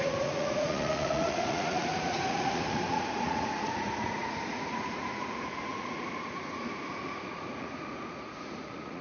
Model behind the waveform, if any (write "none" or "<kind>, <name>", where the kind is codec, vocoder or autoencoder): vocoder, Vocos